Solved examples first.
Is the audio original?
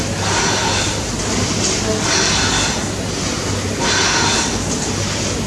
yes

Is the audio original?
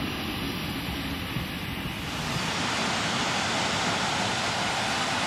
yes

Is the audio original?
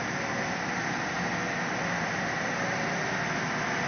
yes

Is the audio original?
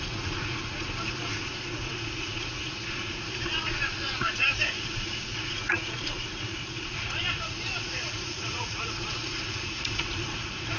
no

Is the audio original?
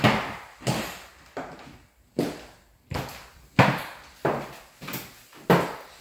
yes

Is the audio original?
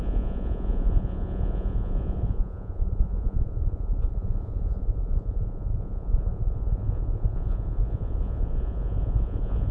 no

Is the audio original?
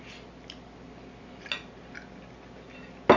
yes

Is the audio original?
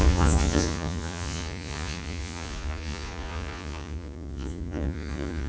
no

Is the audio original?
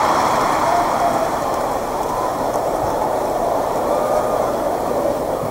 no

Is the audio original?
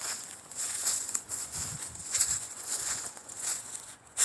no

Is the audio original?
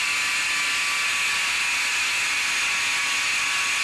yes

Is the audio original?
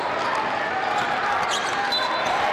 yes